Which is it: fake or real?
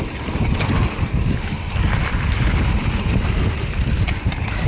fake